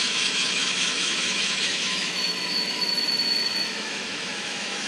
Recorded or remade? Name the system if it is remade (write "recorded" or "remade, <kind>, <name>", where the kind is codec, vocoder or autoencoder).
remade, autoencoder, DAC-VAE